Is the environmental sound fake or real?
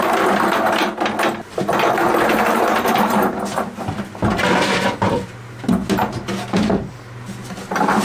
real